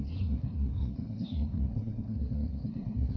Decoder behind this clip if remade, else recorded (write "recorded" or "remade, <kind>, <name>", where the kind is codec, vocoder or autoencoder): remade, codec, SNAC